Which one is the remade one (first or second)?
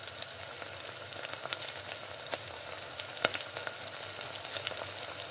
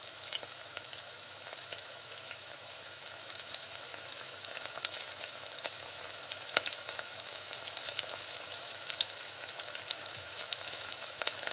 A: second